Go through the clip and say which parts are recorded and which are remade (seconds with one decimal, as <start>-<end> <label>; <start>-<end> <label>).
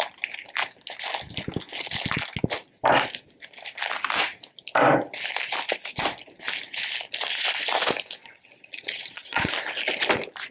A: 0.0-8.2 recorded; 8.2-9.5 remade; 9.5-10.5 recorded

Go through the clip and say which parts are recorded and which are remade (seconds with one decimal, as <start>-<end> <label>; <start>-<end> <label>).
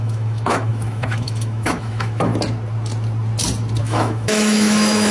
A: 0.0-2.3 remade; 2.3-3.8 recorded; 3.8-5.1 remade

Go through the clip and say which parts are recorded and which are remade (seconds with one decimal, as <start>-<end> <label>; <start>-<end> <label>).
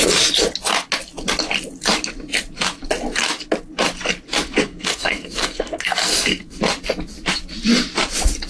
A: 0.0-4.6 recorded; 4.6-6.6 remade; 6.6-8.5 recorded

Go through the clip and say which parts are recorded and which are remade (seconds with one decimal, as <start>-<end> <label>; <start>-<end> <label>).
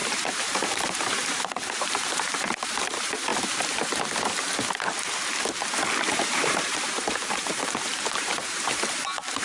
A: 0.0-3.3 remade; 3.3-6.1 recorded; 6.1-9.4 remade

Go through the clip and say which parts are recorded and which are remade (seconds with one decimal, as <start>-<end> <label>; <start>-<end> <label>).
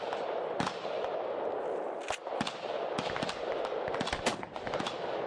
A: 0.0-5.3 recorded